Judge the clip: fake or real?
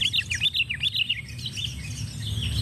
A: real